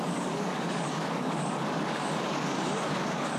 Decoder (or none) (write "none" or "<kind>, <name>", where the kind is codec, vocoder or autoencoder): codec, DAC